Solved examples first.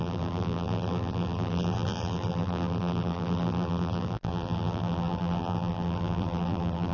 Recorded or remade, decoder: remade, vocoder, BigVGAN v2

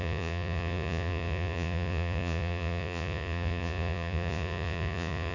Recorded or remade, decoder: remade, vocoder, Vocos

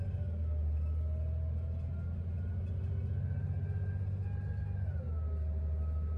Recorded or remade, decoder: recorded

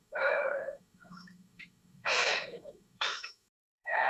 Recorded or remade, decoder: remade, autoencoder, DAC-VAE